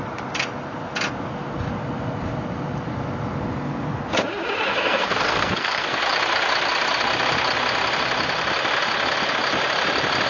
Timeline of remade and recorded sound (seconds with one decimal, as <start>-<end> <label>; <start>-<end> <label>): 0.0-4.7 recorded; 4.7-6.0 remade; 6.0-10.3 recorded